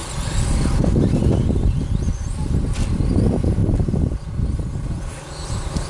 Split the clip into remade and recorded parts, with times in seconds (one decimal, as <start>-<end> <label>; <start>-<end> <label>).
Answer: 0.0-2.0 remade; 2.0-3.6 recorded; 3.6-4.4 remade; 4.4-5.9 recorded